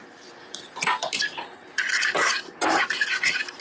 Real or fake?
real